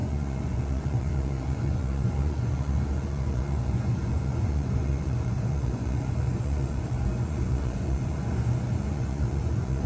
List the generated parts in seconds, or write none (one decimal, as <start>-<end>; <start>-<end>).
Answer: 0.0-9.9